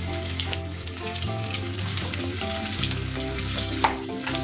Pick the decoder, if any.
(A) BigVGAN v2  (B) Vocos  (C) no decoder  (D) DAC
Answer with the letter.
D